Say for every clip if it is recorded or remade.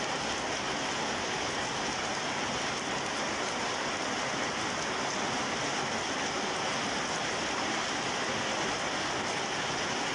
recorded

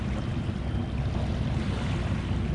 remade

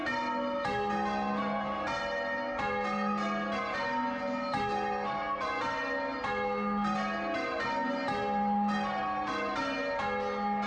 recorded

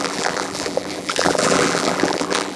remade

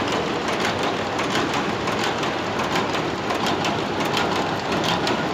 recorded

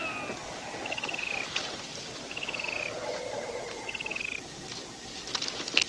recorded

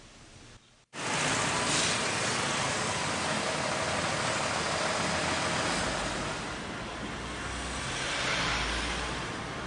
recorded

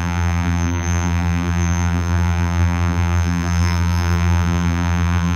remade